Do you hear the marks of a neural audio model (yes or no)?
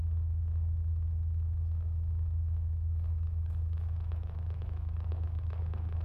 yes